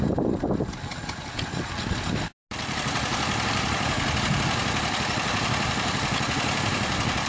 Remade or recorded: recorded